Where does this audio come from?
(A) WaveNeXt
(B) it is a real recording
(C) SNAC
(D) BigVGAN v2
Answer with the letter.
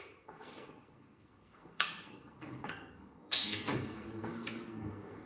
C